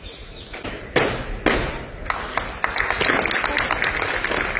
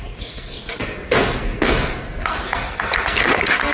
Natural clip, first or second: first